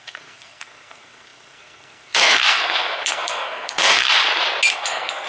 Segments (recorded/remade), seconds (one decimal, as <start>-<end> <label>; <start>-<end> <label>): 0.0-4.2 remade; 4.2-4.7 recorded; 4.7-5.3 remade